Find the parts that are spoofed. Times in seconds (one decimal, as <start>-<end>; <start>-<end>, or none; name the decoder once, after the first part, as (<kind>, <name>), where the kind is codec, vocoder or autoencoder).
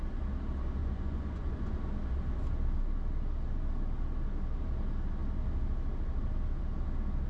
0.8-1.7 (vocoder, Vocos)